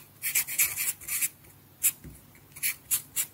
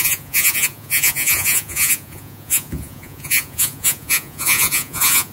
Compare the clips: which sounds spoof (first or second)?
second